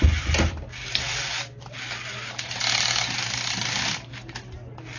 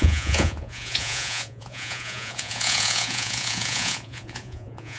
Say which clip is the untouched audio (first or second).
first